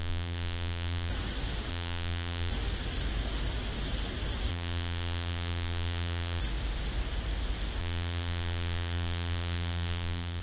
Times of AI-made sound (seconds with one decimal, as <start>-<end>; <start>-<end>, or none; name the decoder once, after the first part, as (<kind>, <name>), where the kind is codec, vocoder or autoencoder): 0.0-1.1 (vocoder, BigVGAN v2); 1.7-2.5; 4.5-6.4; 7.8-10.4